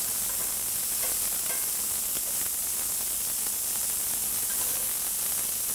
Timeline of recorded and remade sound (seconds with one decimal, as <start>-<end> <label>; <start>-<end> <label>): 0.0-5.7 recorded